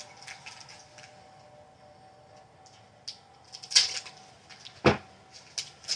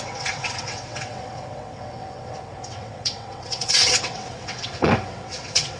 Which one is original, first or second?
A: first